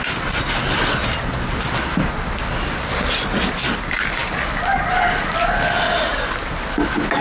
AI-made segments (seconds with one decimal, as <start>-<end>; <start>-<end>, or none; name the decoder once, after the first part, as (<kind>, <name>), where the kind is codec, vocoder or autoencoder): none